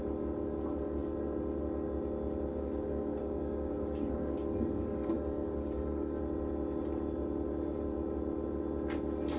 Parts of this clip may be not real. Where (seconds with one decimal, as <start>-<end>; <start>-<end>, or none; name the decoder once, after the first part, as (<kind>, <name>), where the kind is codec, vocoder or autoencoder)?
2.5-6.2 (codec, DAC)